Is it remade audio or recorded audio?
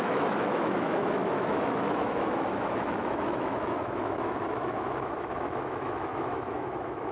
remade